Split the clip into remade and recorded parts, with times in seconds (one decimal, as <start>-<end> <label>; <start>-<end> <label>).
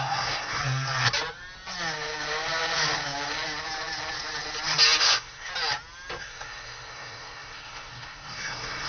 0.0-0.6 remade; 0.6-5.0 recorded; 5.0-5.5 remade; 5.5-6.2 recorded; 6.2-8.9 remade